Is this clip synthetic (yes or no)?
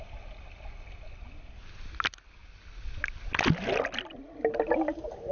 no